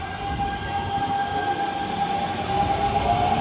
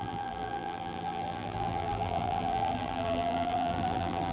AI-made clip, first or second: second